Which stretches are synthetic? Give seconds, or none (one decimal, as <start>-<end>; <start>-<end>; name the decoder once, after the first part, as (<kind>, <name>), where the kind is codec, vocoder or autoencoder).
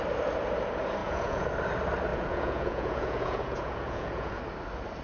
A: 1.0-1.5 (vocoder, Vocos); 2.1-4.4